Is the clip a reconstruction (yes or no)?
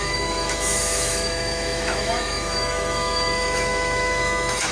yes